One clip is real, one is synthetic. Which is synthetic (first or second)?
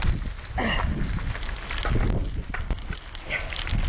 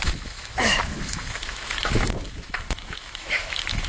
second